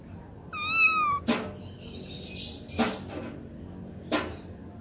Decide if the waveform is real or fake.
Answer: real